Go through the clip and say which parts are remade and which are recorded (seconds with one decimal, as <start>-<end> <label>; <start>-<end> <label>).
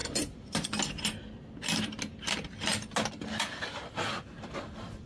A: 0.0-5.1 recorded